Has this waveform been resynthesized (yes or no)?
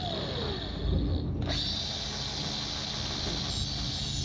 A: no